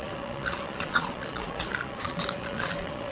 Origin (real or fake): fake